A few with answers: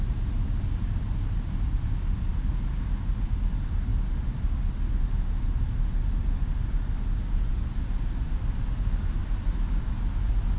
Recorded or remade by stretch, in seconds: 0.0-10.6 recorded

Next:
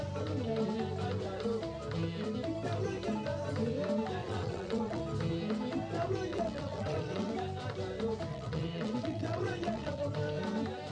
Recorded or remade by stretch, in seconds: 0.0-4.2 recorded; 4.2-5.0 remade; 5.0-6.3 recorded; 6.3-7.3 remade; 7.3-8.3 recorded; 8.3-10.0 remade; 10.0-10.9 recorded